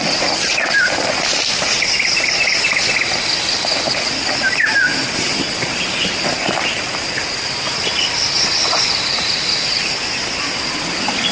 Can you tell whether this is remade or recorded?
recorded